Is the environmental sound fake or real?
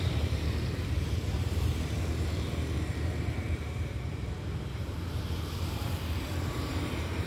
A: fake